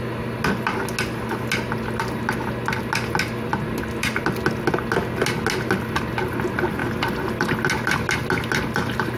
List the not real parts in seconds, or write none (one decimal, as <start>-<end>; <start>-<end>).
none